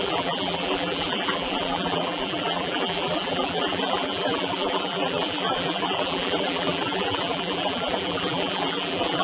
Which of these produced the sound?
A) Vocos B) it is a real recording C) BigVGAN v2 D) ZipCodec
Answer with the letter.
C